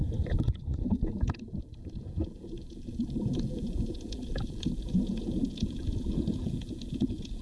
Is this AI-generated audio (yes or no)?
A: yes